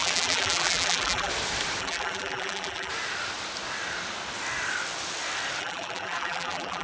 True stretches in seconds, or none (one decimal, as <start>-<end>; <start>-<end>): 1.3-1.8; 2.9-5.6

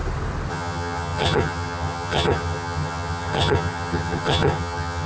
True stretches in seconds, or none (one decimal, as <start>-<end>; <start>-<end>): 0.0-0.5

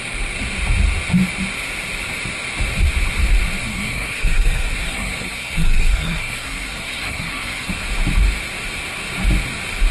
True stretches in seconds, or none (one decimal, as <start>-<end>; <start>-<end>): 0.0-3.6; 7.7-9.9

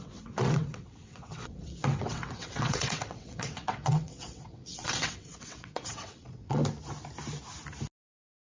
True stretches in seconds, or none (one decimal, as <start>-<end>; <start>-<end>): 6.6-8.6